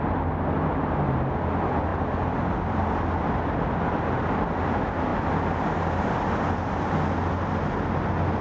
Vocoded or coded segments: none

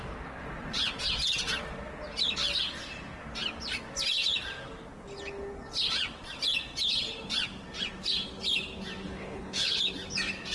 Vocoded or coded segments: 9.0-9.8 (codec, HILCodec)